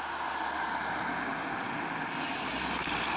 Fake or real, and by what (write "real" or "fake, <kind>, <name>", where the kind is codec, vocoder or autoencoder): real